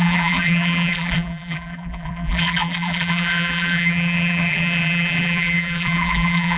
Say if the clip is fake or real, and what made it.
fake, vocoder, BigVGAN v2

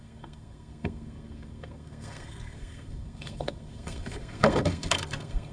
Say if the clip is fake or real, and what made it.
fake, codec, SNAC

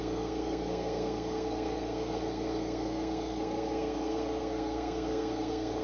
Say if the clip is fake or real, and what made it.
fake, codec, SNAC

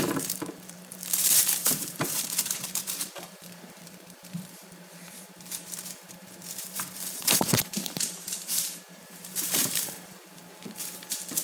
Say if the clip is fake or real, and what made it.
fake, vocoder, BigVGAN v2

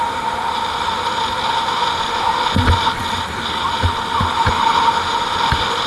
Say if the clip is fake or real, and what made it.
real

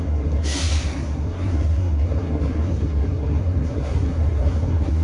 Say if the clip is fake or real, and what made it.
fake, codec, SNAC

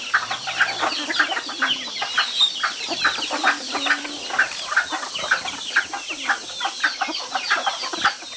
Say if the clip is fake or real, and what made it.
real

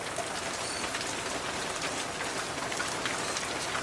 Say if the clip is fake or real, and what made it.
real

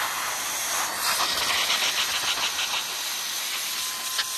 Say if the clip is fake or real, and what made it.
real